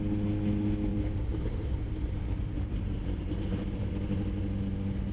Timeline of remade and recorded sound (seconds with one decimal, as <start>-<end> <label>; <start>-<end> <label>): 0.0-0.9 recorded; 0.9-3.9 remade; 3.9-5.1 recorded